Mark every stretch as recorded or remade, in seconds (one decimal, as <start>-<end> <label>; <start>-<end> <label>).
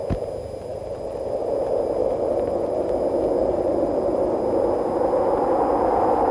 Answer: 0.0-0.7 recorded; 0.7-1.5 remade; 1.5-2.0 recorded; 2.0-2.9 remade; 2.9-3.4 recorded; 3.4-4.4 remade; 4.4-6.3 recorded